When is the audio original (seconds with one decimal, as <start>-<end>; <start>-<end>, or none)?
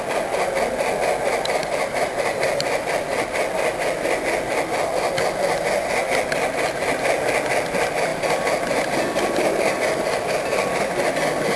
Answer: 0.0-11.6